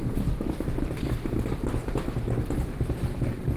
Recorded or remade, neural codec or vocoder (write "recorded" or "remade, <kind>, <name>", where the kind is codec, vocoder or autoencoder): recorded